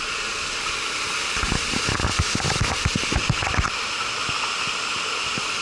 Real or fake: real